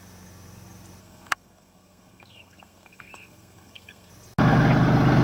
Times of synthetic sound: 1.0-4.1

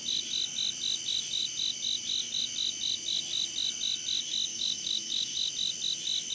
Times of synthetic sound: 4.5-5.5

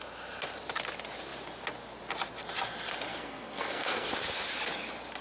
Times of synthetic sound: 3.1-4.1

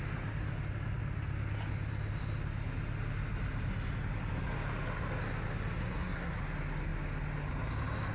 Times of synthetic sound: 5.8-6.4

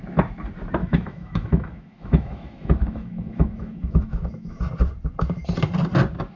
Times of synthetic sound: 0.8-4.6

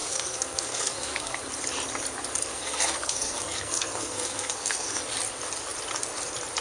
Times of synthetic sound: 0.0-1.4; 2.5-5.0

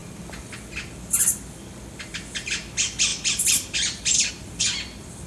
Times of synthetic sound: none

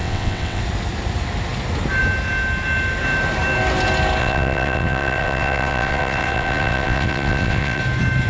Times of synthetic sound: 0.0-0.6; 4.2-7.8